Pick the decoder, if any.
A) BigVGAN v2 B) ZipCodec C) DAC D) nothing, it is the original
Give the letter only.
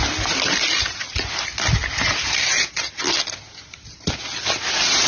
D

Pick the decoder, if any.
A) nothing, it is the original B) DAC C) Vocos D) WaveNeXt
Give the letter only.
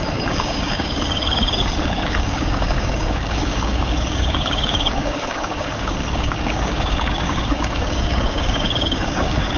B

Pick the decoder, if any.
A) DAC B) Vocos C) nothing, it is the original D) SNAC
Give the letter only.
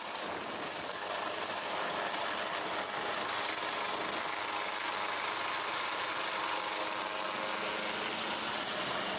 C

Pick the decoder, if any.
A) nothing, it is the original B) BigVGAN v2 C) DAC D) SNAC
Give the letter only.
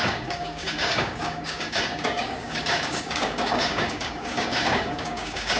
C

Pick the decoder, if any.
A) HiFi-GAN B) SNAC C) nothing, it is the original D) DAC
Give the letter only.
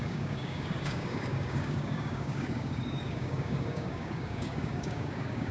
D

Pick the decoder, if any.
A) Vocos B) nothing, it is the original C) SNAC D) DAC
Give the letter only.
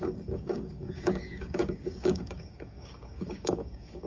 D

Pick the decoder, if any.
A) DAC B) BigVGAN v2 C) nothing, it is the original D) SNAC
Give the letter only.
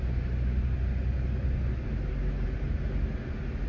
C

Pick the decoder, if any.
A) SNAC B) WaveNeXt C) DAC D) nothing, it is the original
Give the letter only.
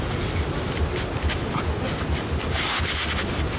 D